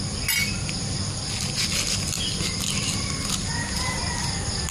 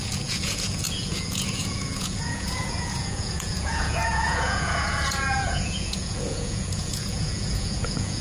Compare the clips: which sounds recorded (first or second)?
first